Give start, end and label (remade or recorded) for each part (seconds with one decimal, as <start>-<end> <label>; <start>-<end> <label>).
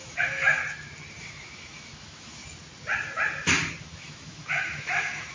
0.0-0.6 remade; 0.6-1.2 recorded; 1.2-2.4 remade; 2.4-3.8 recorded; 3.8-5.3 remade